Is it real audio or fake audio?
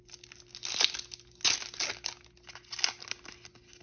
real